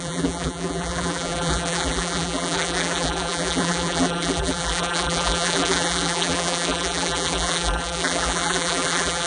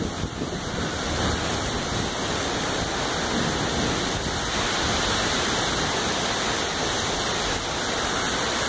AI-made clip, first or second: first